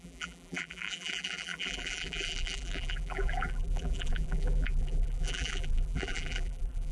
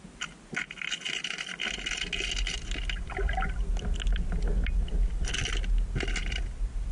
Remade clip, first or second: first